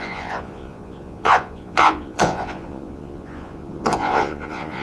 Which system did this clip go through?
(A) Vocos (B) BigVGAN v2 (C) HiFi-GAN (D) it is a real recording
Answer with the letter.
A